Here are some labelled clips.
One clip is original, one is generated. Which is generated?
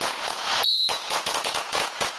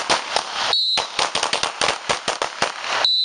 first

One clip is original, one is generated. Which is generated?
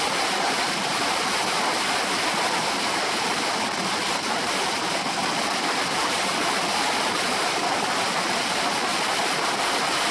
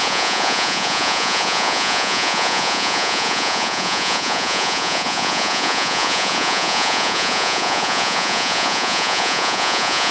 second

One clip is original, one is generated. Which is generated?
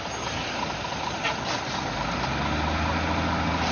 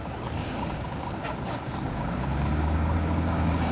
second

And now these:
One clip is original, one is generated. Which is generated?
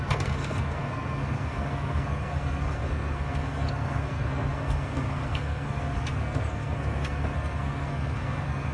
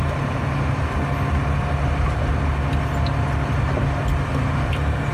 first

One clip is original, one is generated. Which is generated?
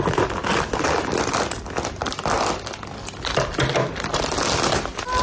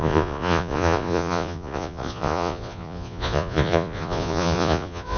second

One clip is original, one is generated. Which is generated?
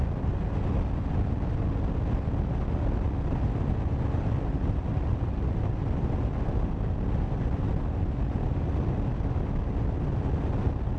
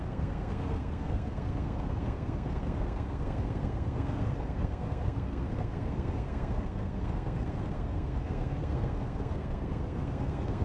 second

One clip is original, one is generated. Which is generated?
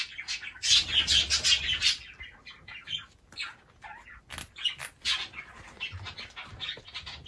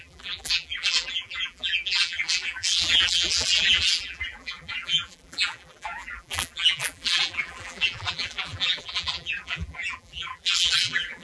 second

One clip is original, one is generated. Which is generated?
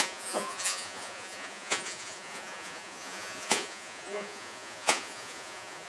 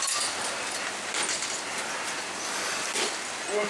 first